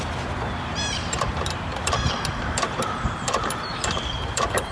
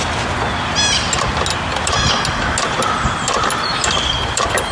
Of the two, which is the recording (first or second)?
second